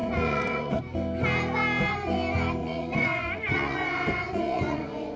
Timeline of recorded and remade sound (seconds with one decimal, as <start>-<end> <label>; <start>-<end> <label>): 0.0-0.8 remade; 0.8-2.6 recorded; 2.6-5.2 remade

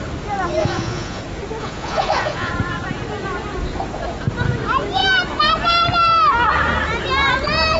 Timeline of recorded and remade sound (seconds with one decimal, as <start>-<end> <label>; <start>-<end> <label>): 0.0-0.6 recorded; 0.6-1.2 remade; 1.2-1.6 recorded; 1.6-2.5 remade; 2.5-7.8 recorded

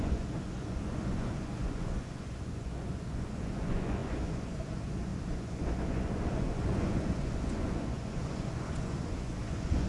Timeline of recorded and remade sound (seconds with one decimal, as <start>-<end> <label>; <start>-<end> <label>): 0.0-9.9 remade